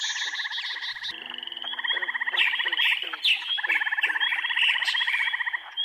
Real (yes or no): yes